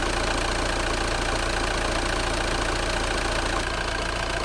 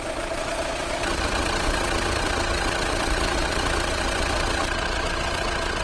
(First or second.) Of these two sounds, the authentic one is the first